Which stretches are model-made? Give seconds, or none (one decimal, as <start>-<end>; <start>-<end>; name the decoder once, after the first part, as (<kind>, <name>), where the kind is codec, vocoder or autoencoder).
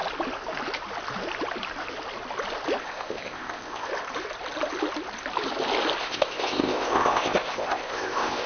2.8-3.9 (codec, ZipCodec); 6.0-8.5